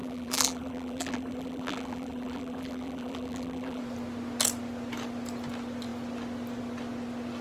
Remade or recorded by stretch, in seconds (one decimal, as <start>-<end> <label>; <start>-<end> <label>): 0.0-3.8 remade; 3.8-7.4 recorded